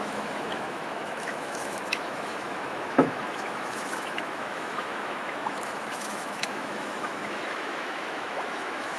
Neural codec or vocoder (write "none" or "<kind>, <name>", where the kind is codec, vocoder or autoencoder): autoencoder, DAC-VAE